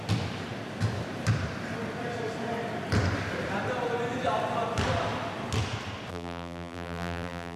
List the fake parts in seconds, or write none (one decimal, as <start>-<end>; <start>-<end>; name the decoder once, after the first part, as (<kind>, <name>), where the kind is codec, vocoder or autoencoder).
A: 6.1-7.6 (vocoder, BigVGAN v2)